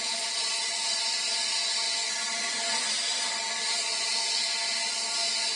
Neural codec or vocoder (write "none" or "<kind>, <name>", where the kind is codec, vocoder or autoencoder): none